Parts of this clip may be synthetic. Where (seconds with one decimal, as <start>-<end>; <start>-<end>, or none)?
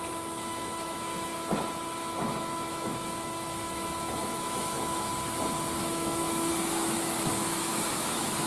0.0-1.3; 2.7-5.1; 5.8-8.5